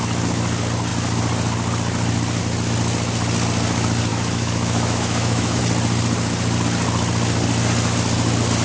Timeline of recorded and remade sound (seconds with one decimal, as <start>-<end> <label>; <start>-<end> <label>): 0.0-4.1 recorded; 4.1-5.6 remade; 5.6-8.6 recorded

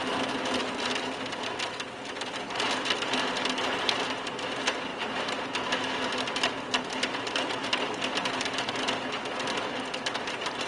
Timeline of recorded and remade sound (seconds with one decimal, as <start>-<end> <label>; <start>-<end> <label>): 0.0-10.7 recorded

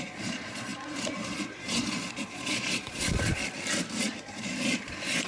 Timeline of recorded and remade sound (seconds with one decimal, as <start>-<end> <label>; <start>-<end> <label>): 0.0-3.4 remade; 3.4-4.0 recorded; 4.0-5.3 remade

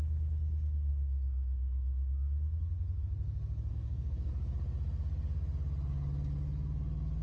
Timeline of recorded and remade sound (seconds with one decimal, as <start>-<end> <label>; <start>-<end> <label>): 0.0-3.7 recorded; 3.7-4.3 remade; 4.3-7.2 recorded

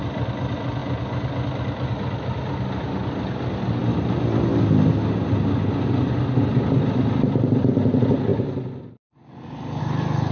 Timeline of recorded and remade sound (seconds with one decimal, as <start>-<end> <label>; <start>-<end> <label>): 0.0-10.3 recorded

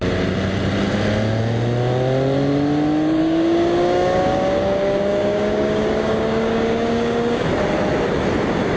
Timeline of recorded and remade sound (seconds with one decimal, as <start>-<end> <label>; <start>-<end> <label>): 0.0-3.2 recorded; 3.2-7.5 remade; 7.5-8.8 recorded